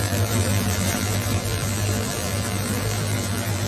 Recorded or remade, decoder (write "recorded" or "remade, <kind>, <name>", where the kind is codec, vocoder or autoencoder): remade, vocoder, BigVGAN v2